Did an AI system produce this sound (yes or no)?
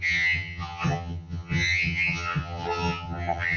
yes